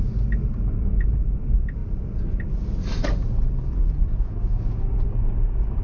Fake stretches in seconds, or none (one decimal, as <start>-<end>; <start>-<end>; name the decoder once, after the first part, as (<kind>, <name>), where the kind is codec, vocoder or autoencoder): none